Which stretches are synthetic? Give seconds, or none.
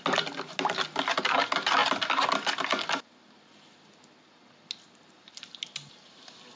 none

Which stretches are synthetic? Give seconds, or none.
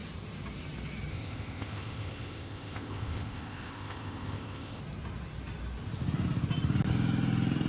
1.1-4.8 (codec, ZipCodec)